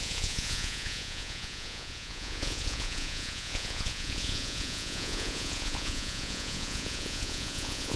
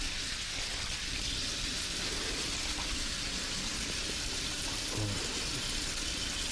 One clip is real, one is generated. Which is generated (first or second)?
first